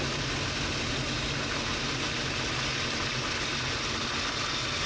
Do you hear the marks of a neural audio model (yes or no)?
no